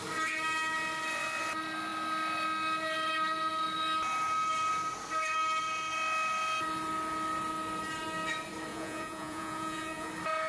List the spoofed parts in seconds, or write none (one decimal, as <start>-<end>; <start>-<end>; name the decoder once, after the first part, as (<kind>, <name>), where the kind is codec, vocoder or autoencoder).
8.7-10.1 (vocoder, Vocos)

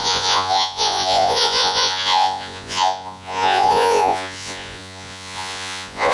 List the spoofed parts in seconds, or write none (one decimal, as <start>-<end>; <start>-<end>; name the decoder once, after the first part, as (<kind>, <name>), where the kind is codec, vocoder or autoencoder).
0.0-6.1 (vocoder, Vocos)

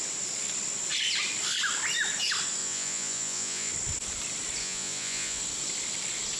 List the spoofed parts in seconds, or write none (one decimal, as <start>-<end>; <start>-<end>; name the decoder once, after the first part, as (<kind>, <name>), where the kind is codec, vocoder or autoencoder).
2.6-3.7 (vocoder, Vocos); 4.6-5.4

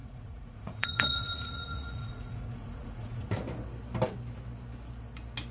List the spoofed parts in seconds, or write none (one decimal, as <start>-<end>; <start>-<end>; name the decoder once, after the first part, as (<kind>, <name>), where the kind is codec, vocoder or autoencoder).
0.0-3.3 (vocoder, Vocos)

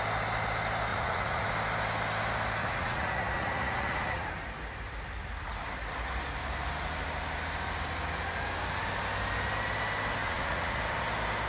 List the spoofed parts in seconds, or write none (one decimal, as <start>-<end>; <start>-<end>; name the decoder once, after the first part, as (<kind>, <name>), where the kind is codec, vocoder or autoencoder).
0.9-1.5 (vocoder, Vocos); 2.6-4.3; 10.2-10.8

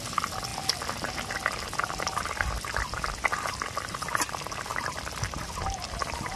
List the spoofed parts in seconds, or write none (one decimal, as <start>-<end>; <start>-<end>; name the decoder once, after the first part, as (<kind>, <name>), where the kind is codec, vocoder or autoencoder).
none